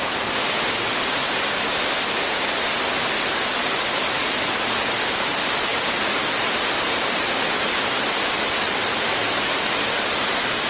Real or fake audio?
real